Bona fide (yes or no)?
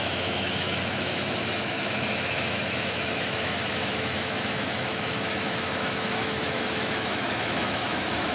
no